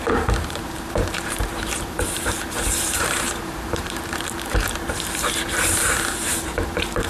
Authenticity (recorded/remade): remade